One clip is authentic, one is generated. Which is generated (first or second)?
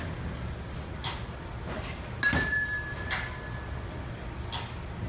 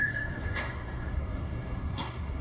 second